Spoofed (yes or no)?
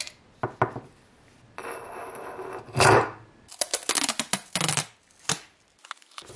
no